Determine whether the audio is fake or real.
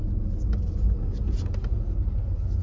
real